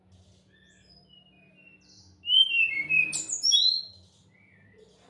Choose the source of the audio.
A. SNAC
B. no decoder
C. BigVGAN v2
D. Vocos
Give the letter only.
B